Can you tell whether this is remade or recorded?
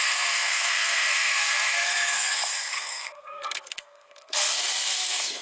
remade